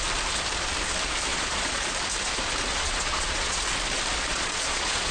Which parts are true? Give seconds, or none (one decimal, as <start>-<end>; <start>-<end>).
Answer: 0.0-1.3; 1.9-2.7; 3.6-4.3